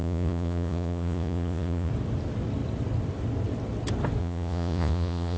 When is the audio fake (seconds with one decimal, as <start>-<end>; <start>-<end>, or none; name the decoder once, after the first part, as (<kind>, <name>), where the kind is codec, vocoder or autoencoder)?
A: 0.0-1.9 (vocoder, Vocos); 4.2-5.4